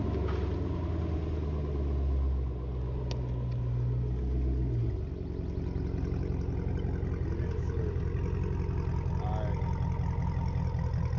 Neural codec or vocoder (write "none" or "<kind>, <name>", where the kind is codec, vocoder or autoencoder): none